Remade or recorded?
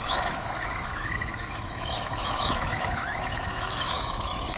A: remade